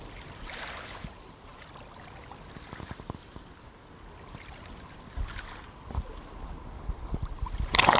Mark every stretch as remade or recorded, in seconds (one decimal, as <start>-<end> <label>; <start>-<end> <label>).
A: 0.0-8.0 recorded